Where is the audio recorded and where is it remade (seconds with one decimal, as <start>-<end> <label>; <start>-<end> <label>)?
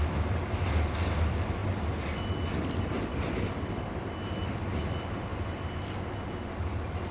0.0-7.1 recorded